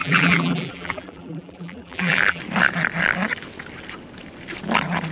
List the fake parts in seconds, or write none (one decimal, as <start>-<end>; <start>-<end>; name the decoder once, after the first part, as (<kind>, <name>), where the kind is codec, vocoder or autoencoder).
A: 0.0-2.4 (vocoder, BigVGAN v2)